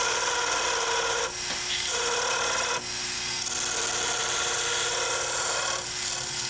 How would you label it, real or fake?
real